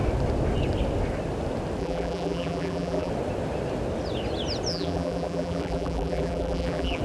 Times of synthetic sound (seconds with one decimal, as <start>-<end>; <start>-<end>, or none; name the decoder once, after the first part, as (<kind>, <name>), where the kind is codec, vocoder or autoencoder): 1.8-3.1 (vocoder, BigVGAN v2); 4.7-7.0